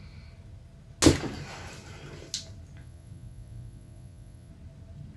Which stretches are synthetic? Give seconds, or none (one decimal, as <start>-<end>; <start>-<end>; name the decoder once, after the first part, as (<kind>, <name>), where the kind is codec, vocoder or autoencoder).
2.8-4.5 (vocoder, Vocos)